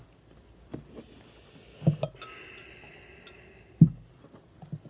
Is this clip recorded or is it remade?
recorded